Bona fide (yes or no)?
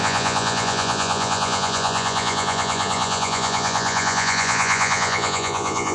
no